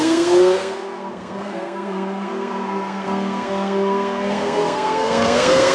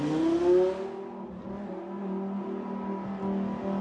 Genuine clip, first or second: second